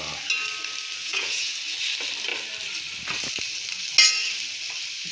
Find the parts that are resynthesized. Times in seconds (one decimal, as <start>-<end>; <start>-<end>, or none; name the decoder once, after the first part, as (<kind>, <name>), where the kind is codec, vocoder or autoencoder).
1.0-1.6 (vocoder, Vocos)